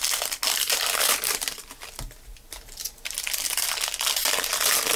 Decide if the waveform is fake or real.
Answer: real